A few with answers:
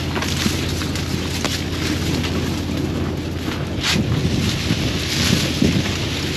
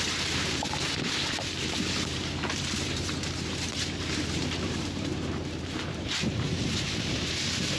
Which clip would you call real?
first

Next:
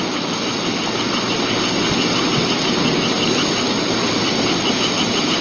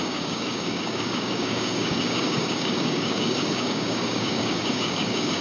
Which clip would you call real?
first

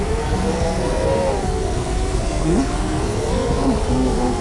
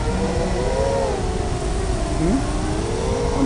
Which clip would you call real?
second